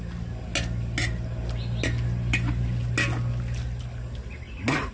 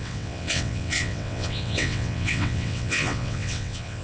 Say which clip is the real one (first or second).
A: first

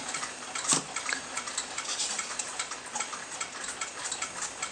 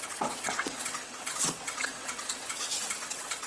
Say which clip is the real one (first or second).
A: first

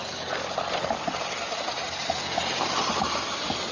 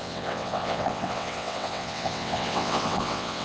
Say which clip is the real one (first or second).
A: first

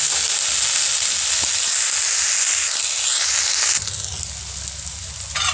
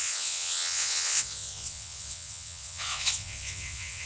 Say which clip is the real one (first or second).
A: first